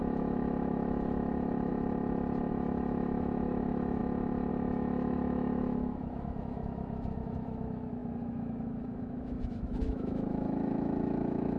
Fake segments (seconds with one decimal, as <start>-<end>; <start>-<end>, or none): 0.0-1.7; 2.5-4.0; 4.5-11.6